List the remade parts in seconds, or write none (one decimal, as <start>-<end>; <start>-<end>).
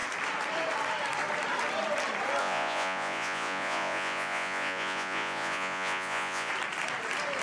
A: 2.4-6.5